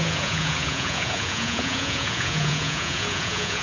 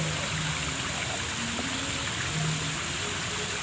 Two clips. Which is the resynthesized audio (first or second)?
first